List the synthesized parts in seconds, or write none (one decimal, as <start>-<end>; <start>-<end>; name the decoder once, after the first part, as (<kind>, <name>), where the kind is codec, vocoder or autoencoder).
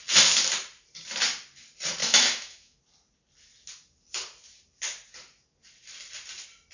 2.0-2.8 (autoencoder, DAC-VAE)